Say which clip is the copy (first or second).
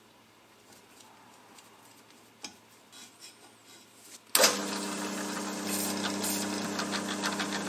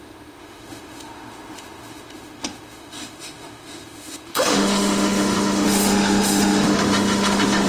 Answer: second